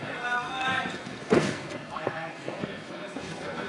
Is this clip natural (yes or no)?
no